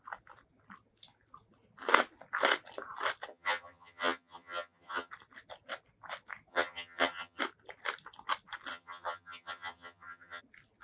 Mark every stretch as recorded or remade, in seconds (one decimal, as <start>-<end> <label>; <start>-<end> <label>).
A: 0.0-3.3 recorded; 3.3-5.1 remade; 5.1-6.5 recorded; 6.5-7.4 remade; 7.4-8.7 recorded; 8.7-10.4 remade; 10.4-10.8 recorded